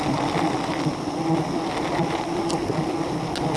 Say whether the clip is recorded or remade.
recorded